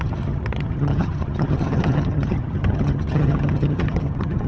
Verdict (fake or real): fake